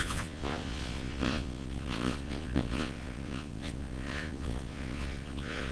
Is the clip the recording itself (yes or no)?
no